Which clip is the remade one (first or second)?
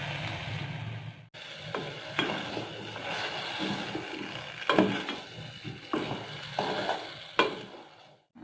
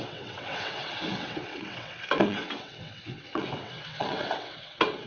second